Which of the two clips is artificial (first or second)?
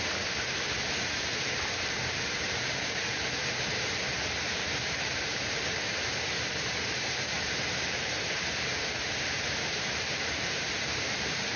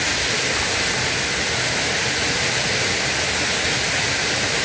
first